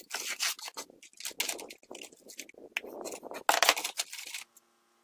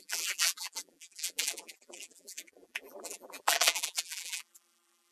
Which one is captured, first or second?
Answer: first